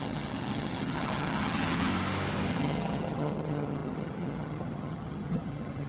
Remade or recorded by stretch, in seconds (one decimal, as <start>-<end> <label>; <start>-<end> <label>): 0.0-1.9 remade; 1.9-2.5 recorded; 2.5-5.9 remade